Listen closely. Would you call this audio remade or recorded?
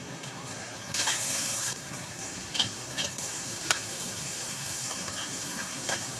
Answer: remade